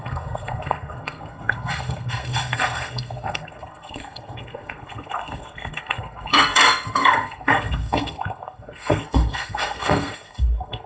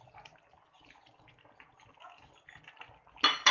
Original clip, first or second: second